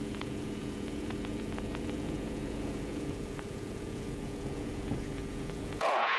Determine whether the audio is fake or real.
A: fake